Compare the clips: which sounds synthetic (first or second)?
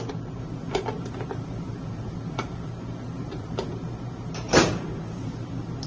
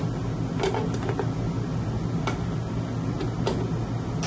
first